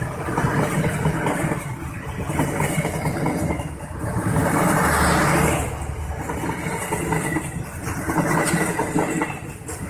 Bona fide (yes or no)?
yes